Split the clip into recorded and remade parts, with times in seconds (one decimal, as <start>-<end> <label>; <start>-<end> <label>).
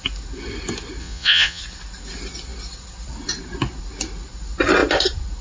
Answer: 0.0-1.0 recorded; 1.0-1.6 remade; 1.6-5.4 recorded